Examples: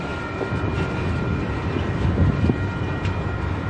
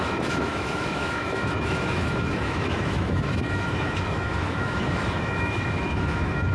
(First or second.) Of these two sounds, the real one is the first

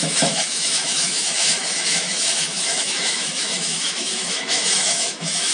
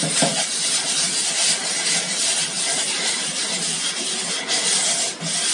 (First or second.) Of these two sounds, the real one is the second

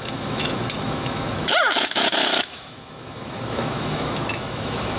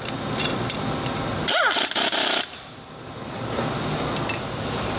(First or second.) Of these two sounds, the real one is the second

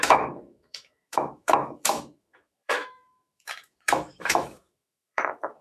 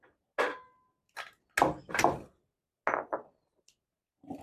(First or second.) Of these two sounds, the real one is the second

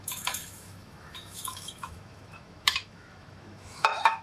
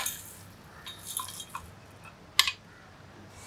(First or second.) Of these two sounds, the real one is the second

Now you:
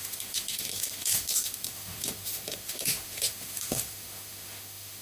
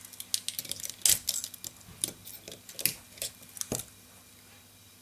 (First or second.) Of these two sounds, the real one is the second